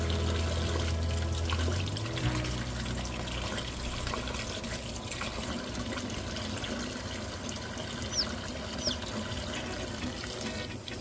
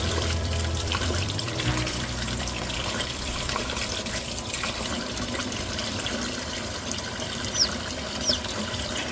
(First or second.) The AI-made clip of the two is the second